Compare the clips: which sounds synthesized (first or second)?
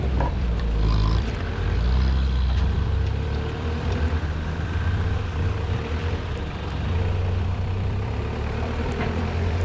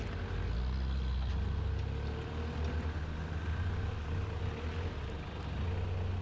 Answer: first